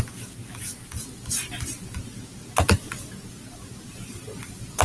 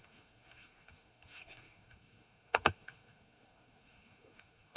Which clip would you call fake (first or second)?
second